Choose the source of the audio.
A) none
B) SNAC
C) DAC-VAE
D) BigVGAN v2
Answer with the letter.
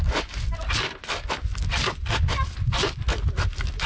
A